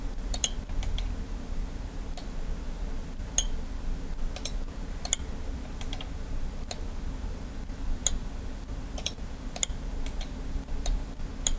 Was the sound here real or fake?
real